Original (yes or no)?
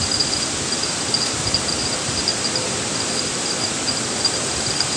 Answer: yes